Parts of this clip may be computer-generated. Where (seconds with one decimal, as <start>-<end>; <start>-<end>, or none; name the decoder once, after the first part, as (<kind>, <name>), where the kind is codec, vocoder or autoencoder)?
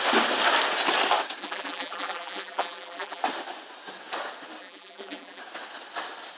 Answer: 1.4-3.2 (vocoder, BigVGAN v2); 4.6-5.4